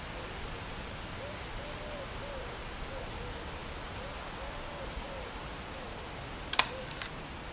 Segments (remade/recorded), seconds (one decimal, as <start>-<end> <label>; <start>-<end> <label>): 0.0-7.5 recorded